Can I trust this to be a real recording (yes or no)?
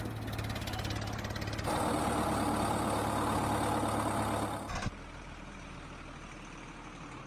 yes